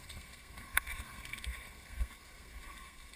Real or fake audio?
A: fake